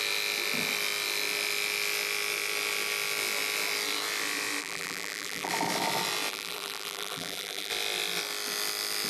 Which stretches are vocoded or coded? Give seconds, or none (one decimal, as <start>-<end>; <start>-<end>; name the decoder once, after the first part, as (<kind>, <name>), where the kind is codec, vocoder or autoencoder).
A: 4.6-5.5 (vocoder, BigVGAN v2); 6.3-7.7